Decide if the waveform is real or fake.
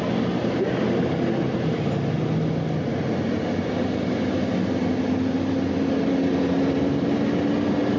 real